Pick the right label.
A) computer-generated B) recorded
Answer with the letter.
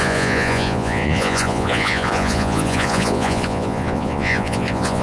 A